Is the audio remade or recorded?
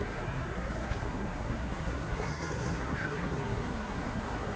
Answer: remade